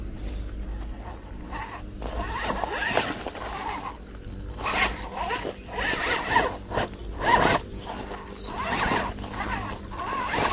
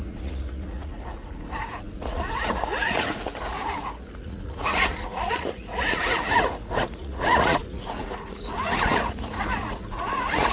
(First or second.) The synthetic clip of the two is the second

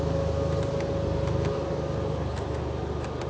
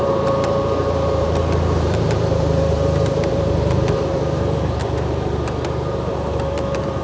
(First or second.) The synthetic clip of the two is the second